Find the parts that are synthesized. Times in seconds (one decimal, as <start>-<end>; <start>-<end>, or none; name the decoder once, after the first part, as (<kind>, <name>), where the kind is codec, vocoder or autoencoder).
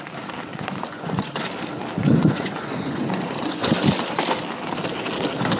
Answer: 0.5-1.4 (vocoder, Vocos); 2.0-3.7